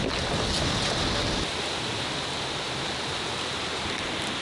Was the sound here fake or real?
real